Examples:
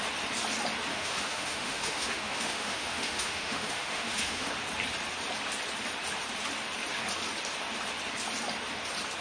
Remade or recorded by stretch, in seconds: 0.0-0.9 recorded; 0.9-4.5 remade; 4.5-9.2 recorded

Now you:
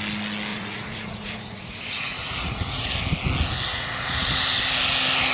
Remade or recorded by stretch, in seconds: 0.0-0.5 recorded; 0.5-2.9 remade; 2.9-3.7 recorded; 3.7-4.3 remade; 4.3-5.3 recorded